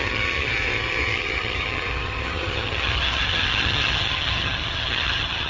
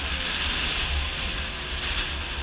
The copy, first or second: first